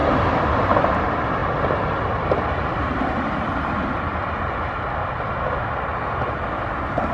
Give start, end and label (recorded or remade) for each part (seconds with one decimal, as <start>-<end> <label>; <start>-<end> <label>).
0.0-0.6 recorded; 0.6-5.9 remade; 5.9-7.1 recorded